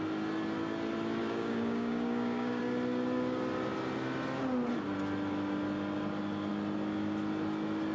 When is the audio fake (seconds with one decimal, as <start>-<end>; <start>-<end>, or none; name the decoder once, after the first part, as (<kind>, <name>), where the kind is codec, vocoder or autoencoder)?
1.2-2.6 (codec, DAC)